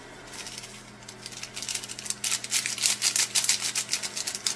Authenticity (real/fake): real